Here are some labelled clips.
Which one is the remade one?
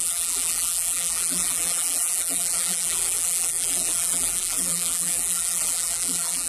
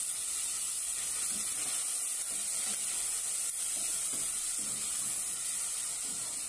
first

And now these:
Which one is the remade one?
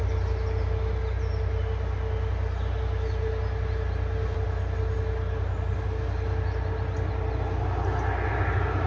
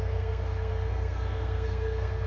second